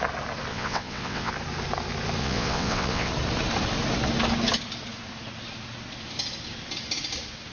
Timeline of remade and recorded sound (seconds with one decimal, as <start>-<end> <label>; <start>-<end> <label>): 0.0-0.5 recorded; 0.5-1.3 remade; 1.3-2.2 recorded; 2.2-3.1 remade; 3.1-7.5 recorded